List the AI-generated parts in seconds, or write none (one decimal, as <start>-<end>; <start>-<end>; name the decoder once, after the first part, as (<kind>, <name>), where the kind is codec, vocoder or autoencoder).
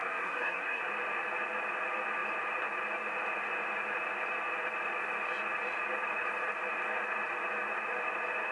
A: 0.0-0.8 (codec, SNAC)